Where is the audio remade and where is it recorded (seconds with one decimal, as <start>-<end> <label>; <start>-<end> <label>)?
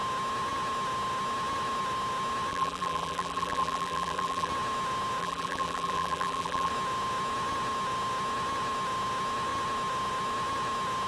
0.0-2.5 recorded; 2.5-4.5 remade; 4.5-5.2 recorded; 5.2-6.7 remade; 6.7-11.1 recorded